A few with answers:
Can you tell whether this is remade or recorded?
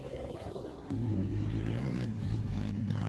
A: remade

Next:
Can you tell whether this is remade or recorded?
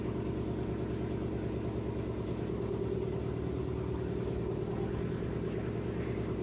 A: recorded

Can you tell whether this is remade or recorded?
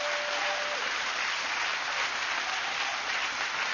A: recorded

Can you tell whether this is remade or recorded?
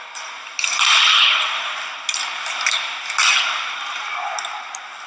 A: recorded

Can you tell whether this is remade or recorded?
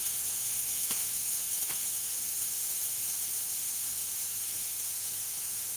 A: remade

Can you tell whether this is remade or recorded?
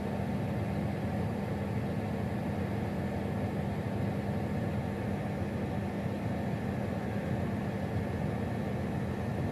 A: recorded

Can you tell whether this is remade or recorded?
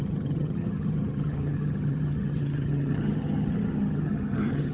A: remade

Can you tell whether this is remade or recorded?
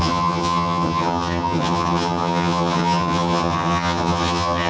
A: remade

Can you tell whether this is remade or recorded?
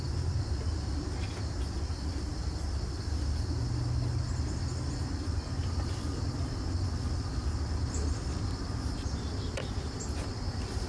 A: recorded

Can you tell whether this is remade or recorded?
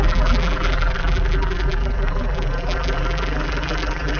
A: remade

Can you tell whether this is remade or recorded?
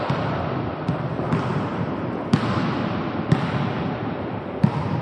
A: remade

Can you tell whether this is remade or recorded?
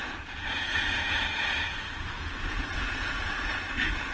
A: remade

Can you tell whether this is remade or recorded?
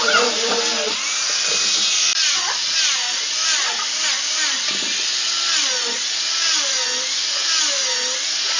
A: recorded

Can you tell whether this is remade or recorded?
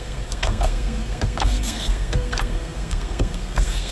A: remade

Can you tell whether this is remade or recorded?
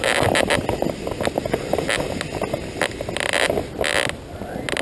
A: recorded